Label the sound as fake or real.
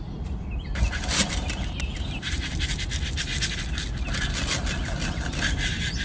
real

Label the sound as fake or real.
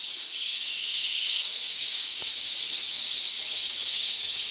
fake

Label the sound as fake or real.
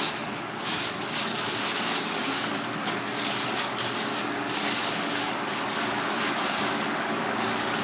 fake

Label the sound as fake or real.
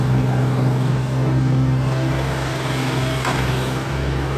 fake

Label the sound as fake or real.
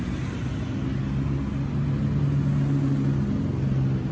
real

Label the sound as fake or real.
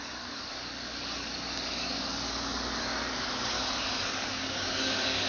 fake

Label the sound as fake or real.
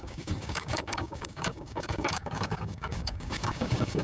fake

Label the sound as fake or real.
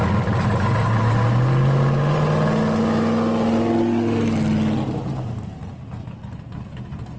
real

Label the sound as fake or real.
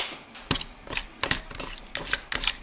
real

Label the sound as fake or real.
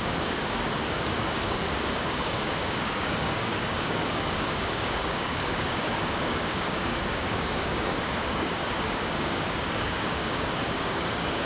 fake